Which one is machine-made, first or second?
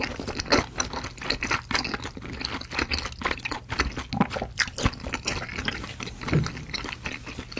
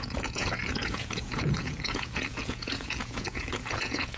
second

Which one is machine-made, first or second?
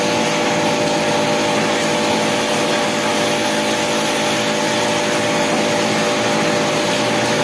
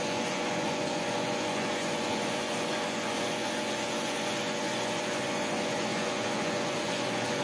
second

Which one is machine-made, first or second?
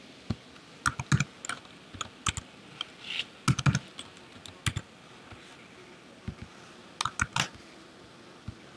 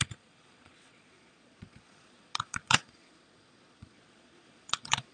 second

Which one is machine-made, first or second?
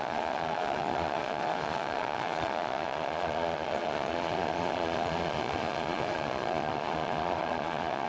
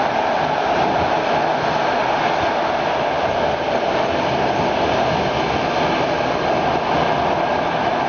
first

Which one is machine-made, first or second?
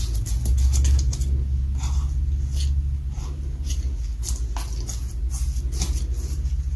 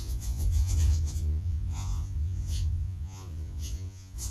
second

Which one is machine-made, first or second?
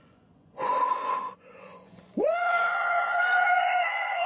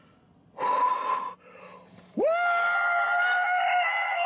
first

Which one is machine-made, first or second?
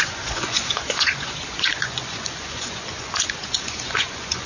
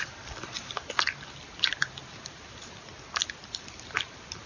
first